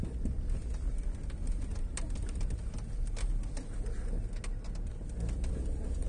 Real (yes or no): yes